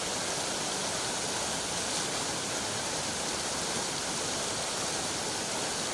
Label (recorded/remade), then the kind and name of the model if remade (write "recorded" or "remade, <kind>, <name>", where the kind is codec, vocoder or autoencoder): recorded